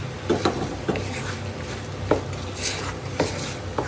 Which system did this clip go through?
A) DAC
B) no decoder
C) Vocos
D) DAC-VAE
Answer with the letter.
B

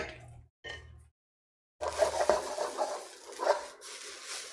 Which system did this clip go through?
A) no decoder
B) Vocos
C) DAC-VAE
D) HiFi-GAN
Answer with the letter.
A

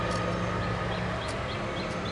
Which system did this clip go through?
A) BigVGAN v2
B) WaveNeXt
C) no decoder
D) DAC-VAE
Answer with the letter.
C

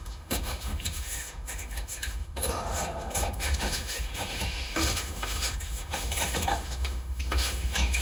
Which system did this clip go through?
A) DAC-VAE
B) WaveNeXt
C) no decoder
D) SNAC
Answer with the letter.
A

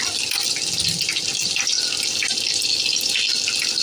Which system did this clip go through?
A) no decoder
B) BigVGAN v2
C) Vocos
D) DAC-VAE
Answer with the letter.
A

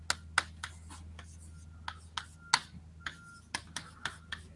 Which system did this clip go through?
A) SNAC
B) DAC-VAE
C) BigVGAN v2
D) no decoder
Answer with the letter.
D